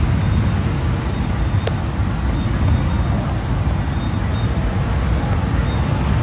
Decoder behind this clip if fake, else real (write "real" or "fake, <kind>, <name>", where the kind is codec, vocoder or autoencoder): real